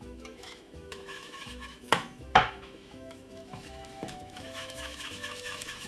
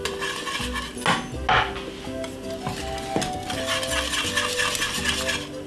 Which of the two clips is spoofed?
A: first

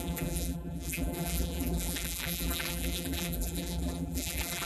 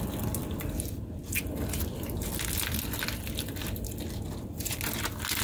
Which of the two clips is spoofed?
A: first